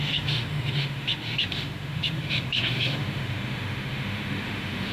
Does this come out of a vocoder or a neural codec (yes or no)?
yes